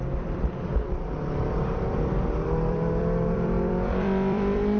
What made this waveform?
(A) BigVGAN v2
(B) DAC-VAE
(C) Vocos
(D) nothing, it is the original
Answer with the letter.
A